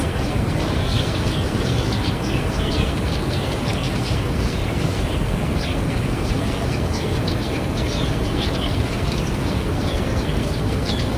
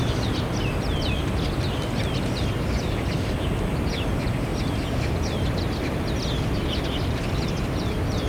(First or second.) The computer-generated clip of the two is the first